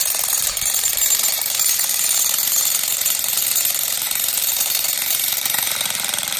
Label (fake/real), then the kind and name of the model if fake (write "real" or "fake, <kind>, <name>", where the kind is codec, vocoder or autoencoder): fake, vocoder, BigVGAN v2